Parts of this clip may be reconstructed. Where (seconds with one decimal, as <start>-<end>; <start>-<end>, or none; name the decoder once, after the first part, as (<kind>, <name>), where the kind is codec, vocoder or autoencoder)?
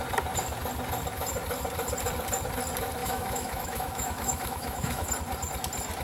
3.0-5.1 (autoencoder, DAC-VAE)